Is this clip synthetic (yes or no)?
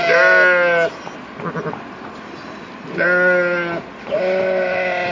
no